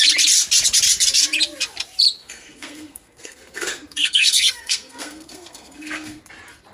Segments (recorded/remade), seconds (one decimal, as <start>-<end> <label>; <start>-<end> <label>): 0.0-2.2 recorded; 2.2-6.2 remade; 6.2-6.7 recorded